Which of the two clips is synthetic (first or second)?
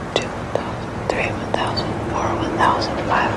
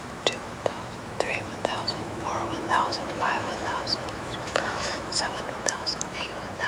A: second